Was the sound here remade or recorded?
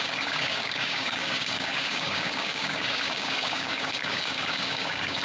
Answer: remade